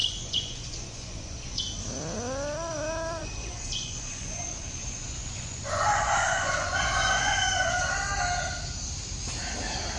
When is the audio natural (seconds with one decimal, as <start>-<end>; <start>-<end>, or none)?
1.6-3.2; 7.9-10.0